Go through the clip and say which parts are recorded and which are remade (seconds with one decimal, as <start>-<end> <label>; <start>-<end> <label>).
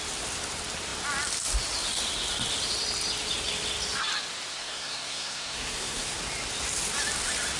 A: 0.0-4.5 recorded; 4.5-6.2 remade; 6.2-7.6 recorded